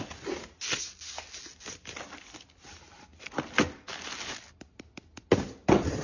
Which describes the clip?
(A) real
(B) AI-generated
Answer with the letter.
A